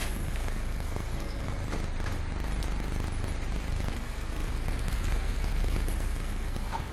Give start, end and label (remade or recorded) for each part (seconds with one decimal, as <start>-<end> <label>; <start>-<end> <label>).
0.0-1.6 remade; 1.6-3.7 recorded; 3.7-6.9 remade